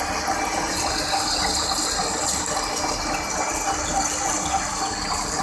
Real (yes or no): yes